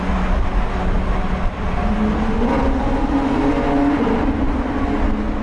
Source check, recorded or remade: recorded